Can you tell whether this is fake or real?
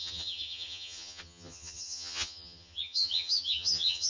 fake